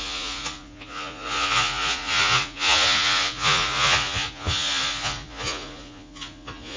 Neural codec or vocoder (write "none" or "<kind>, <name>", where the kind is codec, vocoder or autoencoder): vocoder, Vocos